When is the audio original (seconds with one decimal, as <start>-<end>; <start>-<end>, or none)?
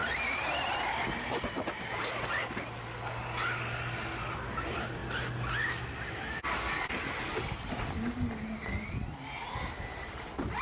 0.0-10.6